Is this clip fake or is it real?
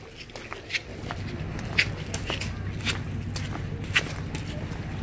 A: real